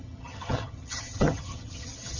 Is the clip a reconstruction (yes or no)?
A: yes